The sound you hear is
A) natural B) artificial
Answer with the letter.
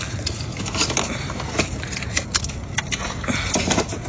A